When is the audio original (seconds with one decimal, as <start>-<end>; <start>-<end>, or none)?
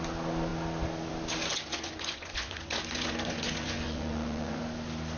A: 0.0-1.5; 4.6-5.2